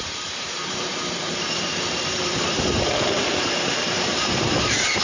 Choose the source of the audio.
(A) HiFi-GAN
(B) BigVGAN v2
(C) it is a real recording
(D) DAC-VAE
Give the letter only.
B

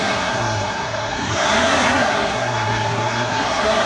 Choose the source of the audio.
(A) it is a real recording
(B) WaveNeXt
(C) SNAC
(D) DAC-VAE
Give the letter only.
C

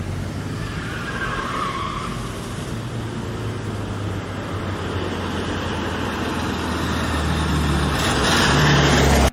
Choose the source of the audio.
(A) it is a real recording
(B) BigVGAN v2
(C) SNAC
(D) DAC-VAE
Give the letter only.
A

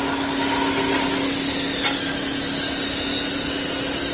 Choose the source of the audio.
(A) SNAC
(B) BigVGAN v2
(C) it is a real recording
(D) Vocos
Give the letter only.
C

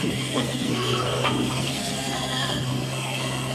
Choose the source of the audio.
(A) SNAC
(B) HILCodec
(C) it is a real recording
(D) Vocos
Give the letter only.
A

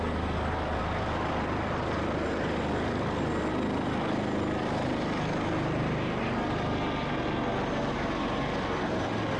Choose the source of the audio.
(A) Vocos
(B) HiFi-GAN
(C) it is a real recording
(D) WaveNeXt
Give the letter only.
C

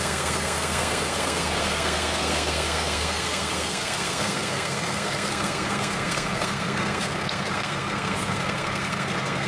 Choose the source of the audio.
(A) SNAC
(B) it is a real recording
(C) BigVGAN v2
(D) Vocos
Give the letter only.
A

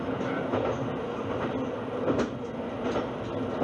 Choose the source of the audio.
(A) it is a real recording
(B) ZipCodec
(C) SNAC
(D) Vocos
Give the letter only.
A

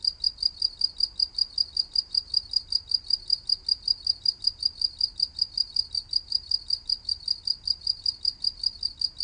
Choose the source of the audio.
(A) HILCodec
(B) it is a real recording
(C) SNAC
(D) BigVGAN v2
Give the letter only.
B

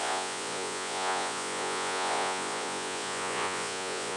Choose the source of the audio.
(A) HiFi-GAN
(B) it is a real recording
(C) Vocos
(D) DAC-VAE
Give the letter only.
C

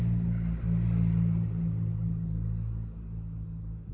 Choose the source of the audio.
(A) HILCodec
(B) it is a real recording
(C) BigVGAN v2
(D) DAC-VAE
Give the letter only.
B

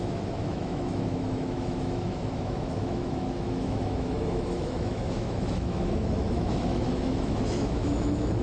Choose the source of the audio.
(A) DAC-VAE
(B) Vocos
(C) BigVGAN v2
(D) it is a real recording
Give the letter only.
A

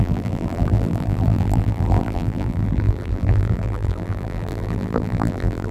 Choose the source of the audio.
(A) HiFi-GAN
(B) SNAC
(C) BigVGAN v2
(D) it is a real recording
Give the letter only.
C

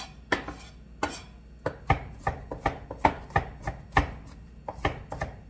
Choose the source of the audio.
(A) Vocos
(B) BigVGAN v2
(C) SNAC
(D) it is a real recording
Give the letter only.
D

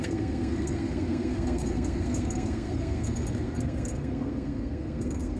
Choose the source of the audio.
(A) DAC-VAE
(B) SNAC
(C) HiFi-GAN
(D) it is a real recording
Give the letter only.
B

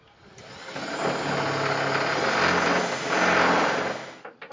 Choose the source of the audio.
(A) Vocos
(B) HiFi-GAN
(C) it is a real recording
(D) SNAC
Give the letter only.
C